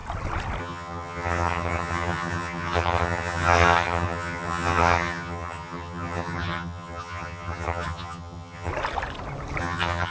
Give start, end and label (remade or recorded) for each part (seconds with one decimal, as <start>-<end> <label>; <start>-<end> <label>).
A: 0.0-0.6 recorded; 0.6-8.7 remade; 8.7-9.6 recorded; 9.6-10.1 remade